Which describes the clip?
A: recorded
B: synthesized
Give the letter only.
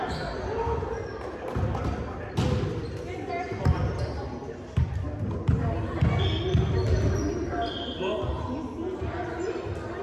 A